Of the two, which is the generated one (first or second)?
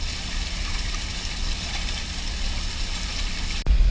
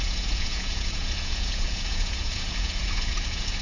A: second